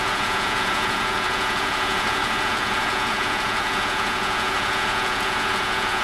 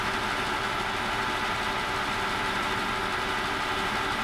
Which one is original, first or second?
second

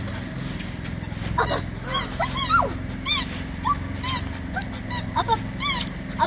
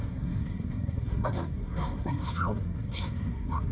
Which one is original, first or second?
first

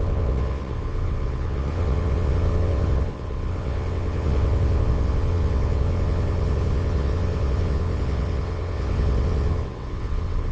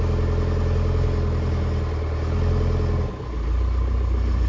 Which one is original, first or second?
second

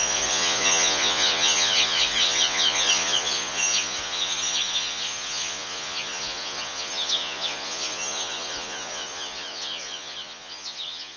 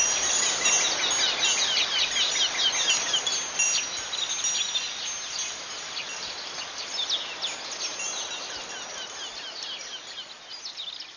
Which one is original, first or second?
second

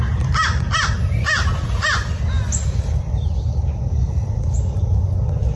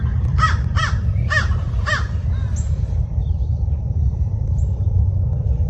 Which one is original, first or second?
first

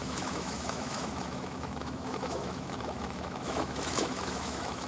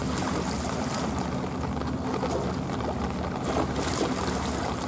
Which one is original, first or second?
second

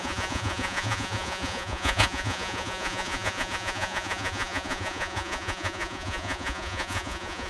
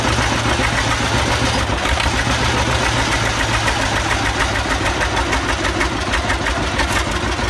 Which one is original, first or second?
second